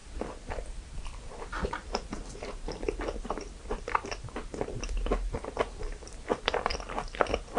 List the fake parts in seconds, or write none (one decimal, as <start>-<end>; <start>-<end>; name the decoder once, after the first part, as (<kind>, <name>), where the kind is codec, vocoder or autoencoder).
0.0-6.7 (vocoder, BigVGAN v2)